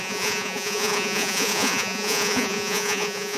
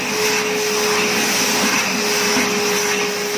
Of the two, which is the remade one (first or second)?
first